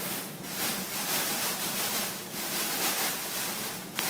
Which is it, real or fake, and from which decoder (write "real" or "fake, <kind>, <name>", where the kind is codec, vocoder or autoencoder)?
fake, vocoder, BigVGAN v2